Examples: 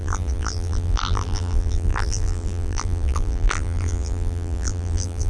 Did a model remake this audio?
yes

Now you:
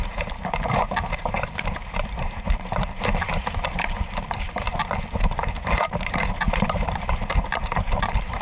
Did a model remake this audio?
yes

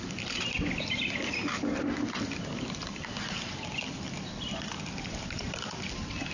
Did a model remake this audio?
no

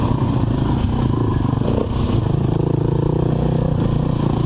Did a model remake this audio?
no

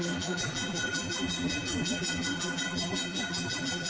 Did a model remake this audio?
yes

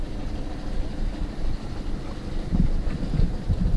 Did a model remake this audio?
no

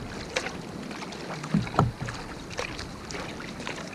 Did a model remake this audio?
no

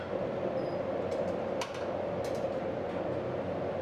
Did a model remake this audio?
no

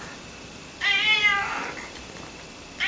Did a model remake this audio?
yes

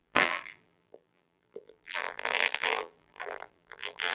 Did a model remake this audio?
yes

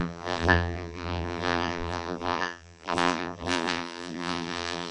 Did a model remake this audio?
yes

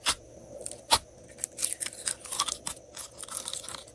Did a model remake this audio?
no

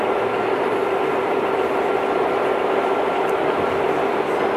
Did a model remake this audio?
no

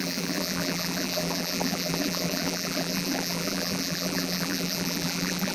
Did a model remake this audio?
yes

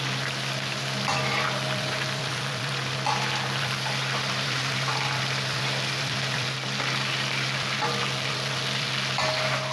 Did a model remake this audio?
yes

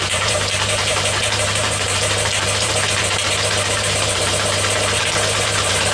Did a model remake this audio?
yes